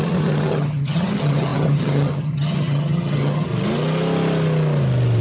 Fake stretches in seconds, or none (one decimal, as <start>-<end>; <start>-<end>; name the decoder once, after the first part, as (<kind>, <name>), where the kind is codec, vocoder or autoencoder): 0.0-3.5 (vocoder, HiFi-GAN)